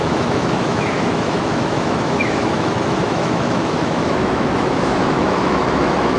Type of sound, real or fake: fake